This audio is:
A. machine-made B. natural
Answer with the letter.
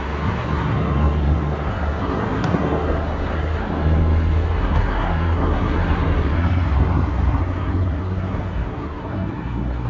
A